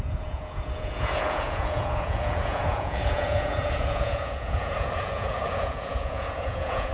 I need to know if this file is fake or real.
fake